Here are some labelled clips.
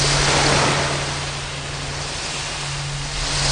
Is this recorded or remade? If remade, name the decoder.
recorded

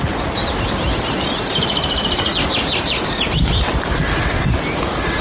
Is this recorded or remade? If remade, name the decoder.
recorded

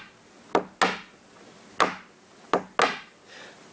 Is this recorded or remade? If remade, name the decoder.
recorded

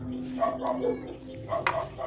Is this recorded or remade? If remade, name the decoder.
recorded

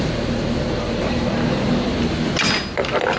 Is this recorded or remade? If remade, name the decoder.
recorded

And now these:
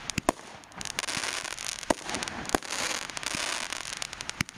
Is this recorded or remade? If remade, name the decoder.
recorded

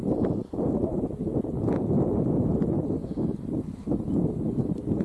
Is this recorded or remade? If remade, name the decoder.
recorded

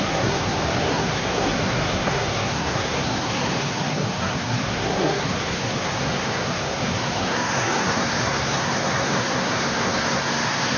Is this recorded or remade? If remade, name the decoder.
remade, codec, SNAC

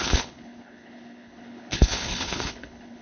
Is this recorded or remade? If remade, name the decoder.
remade, codec, HILCodec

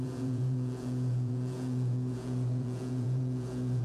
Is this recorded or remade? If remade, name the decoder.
remade, vocoder, Vocos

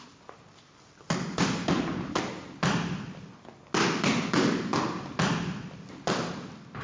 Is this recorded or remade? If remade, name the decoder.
recorded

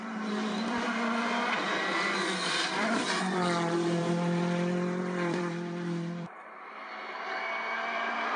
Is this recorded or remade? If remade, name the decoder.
remade, vocoder, BigVGAN v2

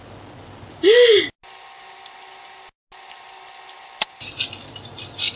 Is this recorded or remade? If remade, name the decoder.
recorded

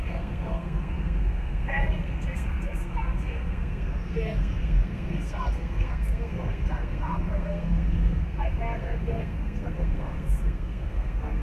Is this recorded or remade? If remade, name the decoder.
remade, codec, SNAC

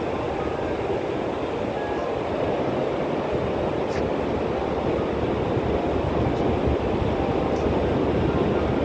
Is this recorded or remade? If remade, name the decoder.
recorded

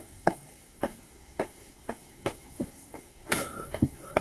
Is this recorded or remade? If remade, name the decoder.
remade, codec, SNAC